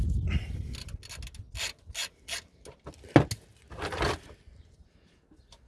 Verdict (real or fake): real